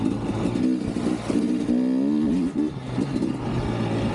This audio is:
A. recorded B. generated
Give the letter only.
A